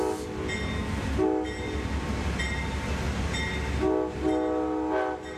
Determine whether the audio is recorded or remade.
recorded